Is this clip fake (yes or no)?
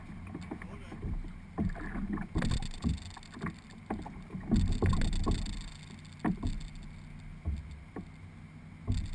no